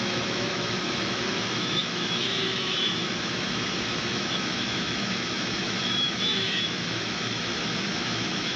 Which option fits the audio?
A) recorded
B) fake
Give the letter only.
B